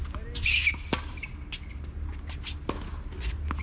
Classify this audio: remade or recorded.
recorded